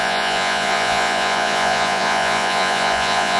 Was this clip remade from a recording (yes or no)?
yes